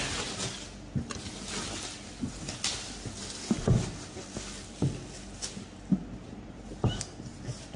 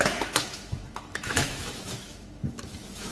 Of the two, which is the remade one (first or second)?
second